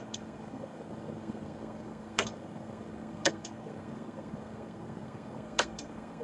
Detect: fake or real fake